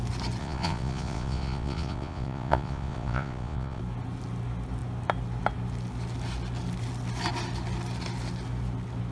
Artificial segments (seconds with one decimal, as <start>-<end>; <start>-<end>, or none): 0.4-3.8